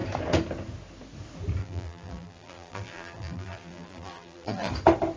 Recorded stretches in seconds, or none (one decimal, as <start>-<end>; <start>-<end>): 0.0-1.6; 4.7-5.2